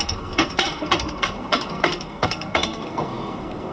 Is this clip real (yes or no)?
no